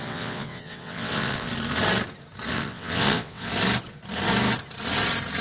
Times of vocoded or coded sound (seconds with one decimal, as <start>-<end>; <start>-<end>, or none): 0.0-1.5; 2.5-3.5